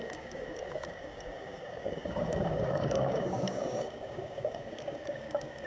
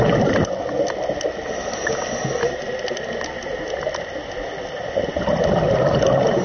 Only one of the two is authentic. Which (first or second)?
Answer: second